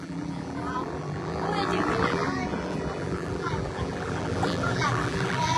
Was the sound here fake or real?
fake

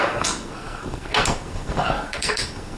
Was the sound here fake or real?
fake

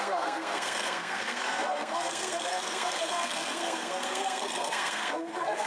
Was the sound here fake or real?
fake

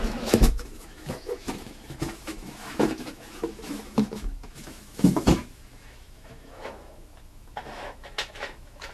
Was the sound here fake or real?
fake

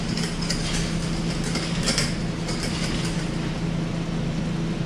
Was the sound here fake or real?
real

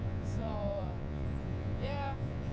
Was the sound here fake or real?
fake